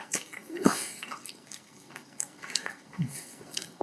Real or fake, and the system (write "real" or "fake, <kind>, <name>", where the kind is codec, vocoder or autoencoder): fake, codec, SNAC